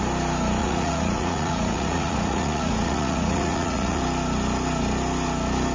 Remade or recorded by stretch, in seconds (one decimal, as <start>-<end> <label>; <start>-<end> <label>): 0.0-0.6 recorded; 0.6-4.0 remade; 4.0-5.7 recorded